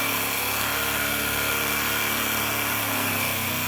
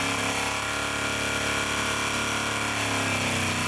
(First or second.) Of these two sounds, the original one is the second